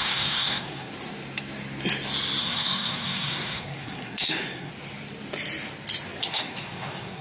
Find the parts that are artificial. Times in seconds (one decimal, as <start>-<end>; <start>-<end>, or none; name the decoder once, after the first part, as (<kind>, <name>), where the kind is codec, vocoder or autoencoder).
0.0-0.9 (codec, SNAC); 2.4-4.7; 6.2-7.2